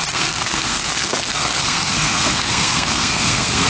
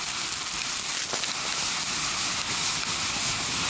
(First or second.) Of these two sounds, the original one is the second